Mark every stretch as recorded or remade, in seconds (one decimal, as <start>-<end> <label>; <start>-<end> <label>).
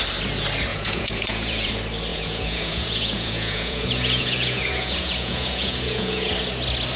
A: 0.0-0.7 recorded; 0.7-1.7 remade; 1.7-2.1 recorded; 2.1-6.3 remade; 6.3-7.0 recorded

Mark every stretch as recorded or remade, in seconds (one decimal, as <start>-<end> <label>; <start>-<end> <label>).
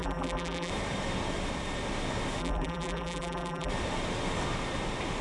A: 0.0-0.7 remade; 0.7-2.4 recorded; 2.4-3.7 remade; 3.7-5.2 recorded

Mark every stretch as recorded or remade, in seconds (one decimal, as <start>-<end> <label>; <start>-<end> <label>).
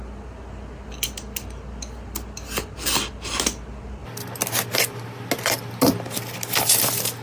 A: 0.0-7.2 recorded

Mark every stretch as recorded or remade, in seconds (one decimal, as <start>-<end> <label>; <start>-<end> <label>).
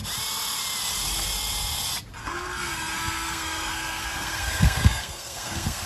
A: 0.0-2.2 recorded; 2.2-5.9 remade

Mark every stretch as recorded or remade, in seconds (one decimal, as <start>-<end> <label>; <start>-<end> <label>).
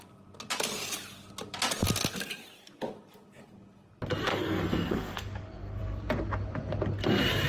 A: 0.0-4.3 recorded; 4.3-5.8 remade; 5.8-7.5 recorded